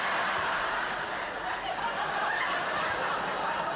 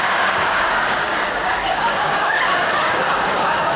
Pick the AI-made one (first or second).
second